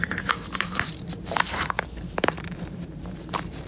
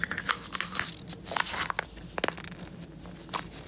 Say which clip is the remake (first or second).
first